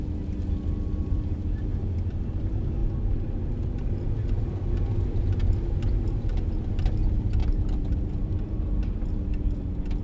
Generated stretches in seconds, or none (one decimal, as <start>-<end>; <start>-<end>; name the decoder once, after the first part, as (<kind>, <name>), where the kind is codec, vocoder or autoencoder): 1.0-1.8 (vocoder, BigVGAN v2); 7.4-8.7